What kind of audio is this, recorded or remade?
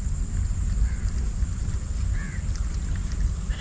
recorded